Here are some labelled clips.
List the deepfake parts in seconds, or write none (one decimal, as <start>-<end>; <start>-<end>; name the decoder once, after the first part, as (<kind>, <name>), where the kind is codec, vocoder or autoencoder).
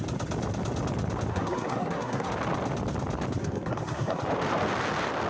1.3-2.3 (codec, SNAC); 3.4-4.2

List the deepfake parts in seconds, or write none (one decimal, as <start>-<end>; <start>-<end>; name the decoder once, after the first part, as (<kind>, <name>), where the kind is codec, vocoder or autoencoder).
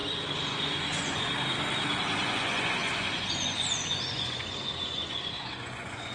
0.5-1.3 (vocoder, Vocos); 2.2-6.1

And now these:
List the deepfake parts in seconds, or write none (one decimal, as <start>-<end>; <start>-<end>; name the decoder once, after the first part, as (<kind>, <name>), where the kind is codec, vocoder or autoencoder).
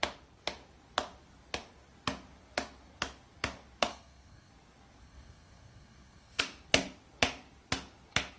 3.9-4.5 (codec, SNAC); 5.0-6.4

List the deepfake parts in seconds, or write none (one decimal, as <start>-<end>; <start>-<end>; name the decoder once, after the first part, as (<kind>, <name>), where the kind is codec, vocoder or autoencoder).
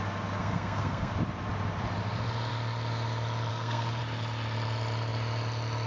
0.4-1.1 (codec, SNAC); 3.5-4.0